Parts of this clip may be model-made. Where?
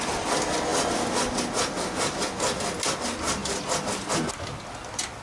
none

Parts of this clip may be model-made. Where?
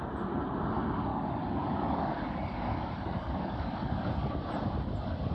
1.1-4.3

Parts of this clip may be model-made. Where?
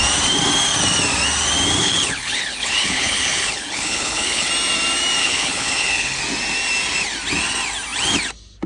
1.8-4.5; 5.2-6.2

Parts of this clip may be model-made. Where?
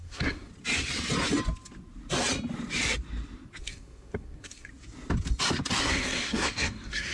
0.0-0.5; 3.6-4.7; 5.8-7.1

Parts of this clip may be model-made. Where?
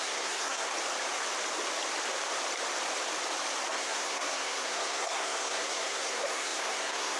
0.0-0.7; 3.7-7.2